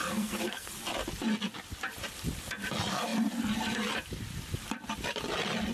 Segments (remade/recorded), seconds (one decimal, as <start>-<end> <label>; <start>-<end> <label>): 0.0-0.7 remade; 0.7-5.7 recorded